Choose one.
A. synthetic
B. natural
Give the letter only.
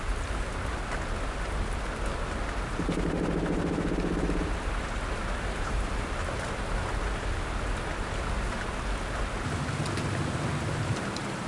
B